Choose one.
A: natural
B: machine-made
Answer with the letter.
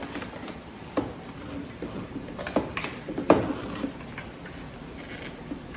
B